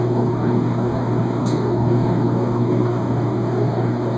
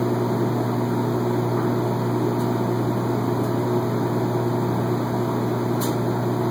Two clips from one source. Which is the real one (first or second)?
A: second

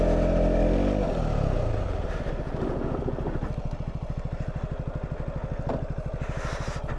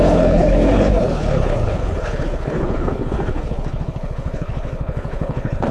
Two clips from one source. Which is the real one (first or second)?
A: first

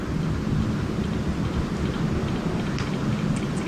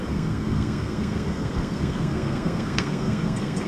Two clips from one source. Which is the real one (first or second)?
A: first